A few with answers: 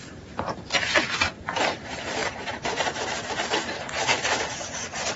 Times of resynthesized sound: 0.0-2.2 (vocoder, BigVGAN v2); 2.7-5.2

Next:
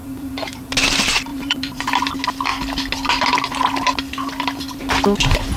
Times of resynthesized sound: 0.0-0.7 (vocoder, BigVGAN v2); 1.3-1.9

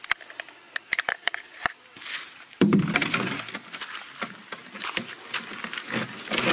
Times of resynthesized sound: 0.6-2.8 (vocoder, BigVGAN v2); 4.6-5.1

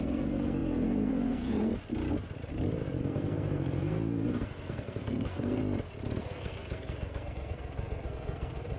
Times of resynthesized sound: 0.0-1.7 (codec, SNAC); 3.0-5.6; 6.2-8.8

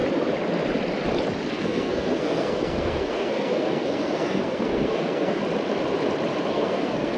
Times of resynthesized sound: 1.5-5.4 (codec, SNAC); 6.5-7.2

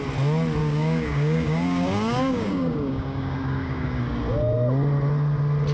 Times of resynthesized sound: 0.6-4.0 (codec, DAC)